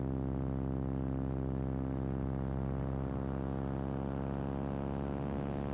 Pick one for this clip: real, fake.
real